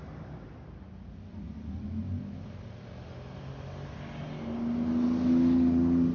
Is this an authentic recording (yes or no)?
yes